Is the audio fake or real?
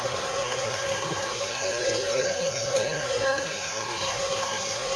fake